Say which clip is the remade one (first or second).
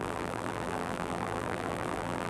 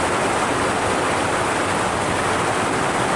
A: first